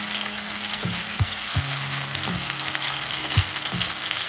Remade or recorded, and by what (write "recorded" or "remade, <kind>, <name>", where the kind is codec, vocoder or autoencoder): remade, codec, SNAC